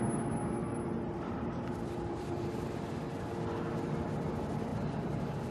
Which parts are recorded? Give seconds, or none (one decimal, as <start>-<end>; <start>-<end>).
0.0-0.6; 2.4-5.5